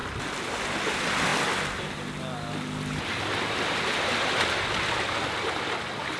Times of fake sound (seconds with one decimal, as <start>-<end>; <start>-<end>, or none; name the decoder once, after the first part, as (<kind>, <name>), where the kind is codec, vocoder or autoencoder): none